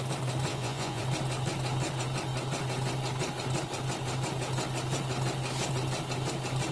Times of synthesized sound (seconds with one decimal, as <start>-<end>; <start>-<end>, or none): 0.5-1.0